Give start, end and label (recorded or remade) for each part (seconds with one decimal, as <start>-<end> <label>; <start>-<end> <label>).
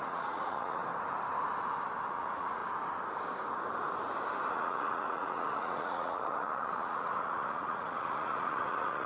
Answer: 0.0-0.8 remade; 0.8-2.1 recorded; 2.1-2.6 remade; 2.6-4.5 recorded; 4.5-9.1 remade